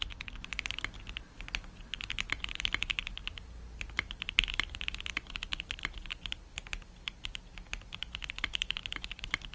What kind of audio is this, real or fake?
real